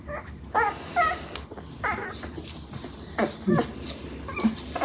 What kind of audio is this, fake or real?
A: real